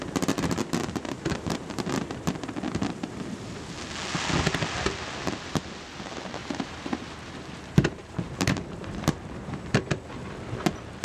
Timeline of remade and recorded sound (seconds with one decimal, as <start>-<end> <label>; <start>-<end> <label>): 0.0-6.4 recorded; 6.4-9.8 remade; 9.8-11.0 recorded